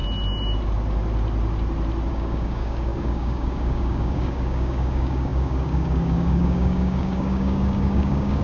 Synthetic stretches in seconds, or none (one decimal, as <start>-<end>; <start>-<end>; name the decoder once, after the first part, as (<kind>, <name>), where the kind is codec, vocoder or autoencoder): 2.1-8.4 (codec, DAC)